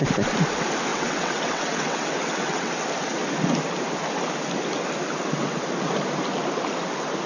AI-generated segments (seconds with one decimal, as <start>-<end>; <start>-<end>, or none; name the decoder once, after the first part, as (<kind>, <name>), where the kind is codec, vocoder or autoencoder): 0.9-2.7 (vocoder, WaveNeXt)